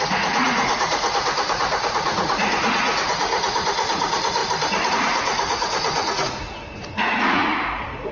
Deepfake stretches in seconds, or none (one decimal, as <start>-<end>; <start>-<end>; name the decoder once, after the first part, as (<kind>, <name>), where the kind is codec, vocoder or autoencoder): 0.0-4.4 (vocoder, Vocos); 4.9-8.1